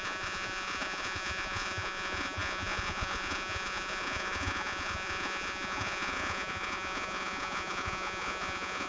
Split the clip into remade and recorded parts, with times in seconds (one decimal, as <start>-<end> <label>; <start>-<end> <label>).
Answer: 0.0-8.9 remade